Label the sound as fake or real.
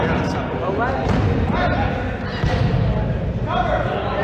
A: real